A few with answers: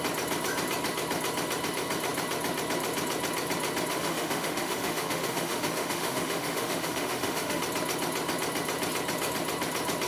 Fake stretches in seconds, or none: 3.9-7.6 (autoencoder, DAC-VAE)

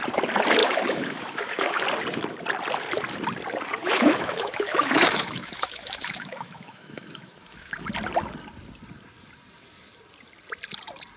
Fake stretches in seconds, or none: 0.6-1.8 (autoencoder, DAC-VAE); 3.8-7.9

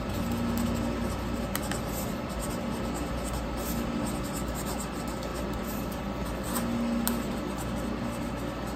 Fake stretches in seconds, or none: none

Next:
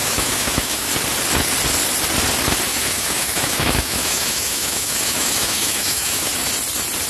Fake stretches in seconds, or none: 0.0-0.9 (autoencoder, DAC-VAE); 2.7-6.3

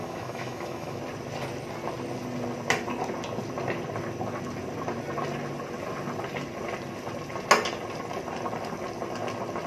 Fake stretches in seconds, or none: 0.0-1.0 (autoencoder, DAC-VAE)